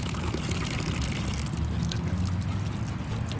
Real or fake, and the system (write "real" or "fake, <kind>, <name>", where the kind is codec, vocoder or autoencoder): real